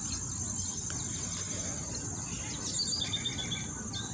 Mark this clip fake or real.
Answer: real